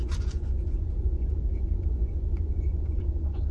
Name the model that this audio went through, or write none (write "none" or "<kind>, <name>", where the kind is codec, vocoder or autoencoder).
vocoder, Vocos